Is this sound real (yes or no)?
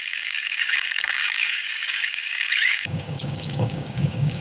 no